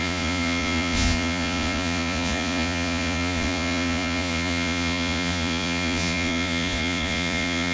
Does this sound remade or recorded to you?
remade